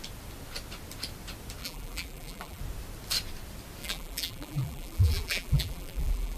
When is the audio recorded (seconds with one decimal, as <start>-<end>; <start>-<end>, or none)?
0.0-1.6; 2.6-3.8